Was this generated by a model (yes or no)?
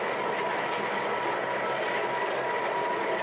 no